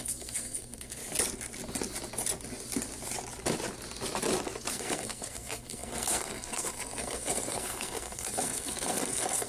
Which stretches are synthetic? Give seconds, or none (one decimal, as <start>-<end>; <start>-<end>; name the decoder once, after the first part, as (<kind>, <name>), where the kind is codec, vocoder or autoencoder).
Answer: 0.0-1.0 (codec, SNAC); 4.7-9.5